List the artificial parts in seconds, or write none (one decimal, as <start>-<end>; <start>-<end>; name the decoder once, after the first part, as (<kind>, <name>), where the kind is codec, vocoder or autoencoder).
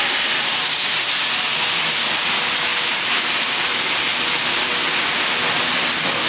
none